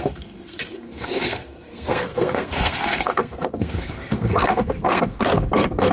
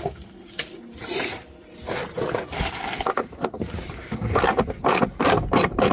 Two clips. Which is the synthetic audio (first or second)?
first